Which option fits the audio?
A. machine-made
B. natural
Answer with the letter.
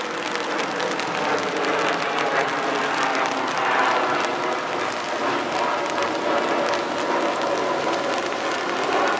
B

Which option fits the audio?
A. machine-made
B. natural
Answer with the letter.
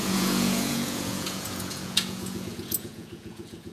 A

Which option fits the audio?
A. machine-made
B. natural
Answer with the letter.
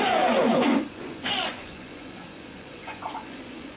A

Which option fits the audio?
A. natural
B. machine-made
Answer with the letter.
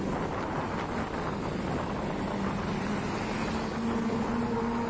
A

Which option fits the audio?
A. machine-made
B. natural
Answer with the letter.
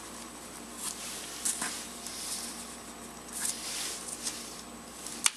B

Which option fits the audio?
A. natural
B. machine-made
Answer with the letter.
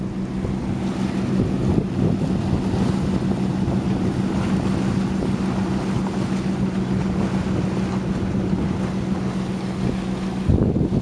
A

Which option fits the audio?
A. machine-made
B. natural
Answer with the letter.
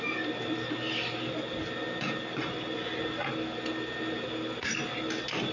B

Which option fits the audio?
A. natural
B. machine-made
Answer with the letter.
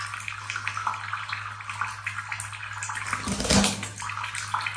A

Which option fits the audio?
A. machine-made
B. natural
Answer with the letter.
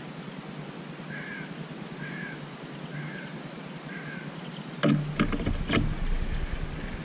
B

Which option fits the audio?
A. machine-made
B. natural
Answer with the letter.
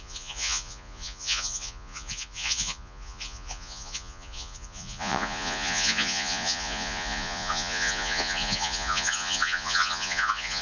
A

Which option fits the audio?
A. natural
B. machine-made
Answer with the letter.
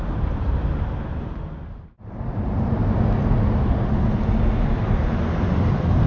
A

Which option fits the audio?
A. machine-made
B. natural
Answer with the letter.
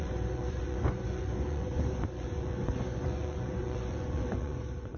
A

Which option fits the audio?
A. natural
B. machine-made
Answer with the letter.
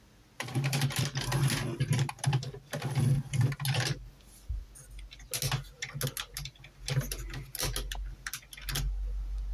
A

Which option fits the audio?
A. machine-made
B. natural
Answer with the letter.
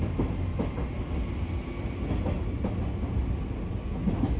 B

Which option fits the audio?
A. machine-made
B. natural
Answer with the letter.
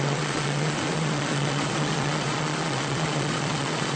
A